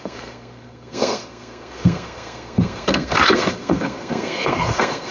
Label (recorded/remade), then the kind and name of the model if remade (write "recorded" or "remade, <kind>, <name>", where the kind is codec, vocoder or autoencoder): remade, codec, SNAC